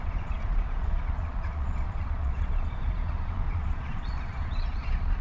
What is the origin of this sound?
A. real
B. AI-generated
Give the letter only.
B